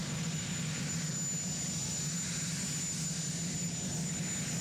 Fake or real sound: real